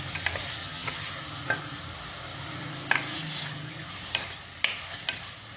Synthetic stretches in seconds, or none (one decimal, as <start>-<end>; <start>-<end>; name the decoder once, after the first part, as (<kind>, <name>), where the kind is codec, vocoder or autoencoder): 0.6-1.1 (vocoder, HiFi-GAN)